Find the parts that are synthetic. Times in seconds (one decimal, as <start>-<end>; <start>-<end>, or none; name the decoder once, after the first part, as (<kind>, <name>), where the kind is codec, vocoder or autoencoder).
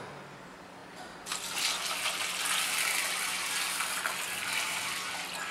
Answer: none